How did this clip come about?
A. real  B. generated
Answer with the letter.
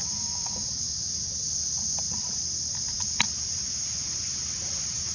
A